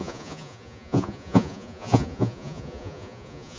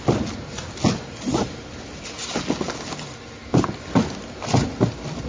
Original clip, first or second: second